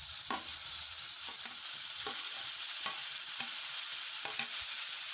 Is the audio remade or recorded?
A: remade